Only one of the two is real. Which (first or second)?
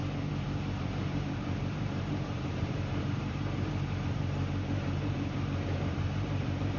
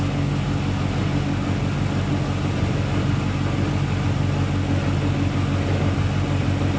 second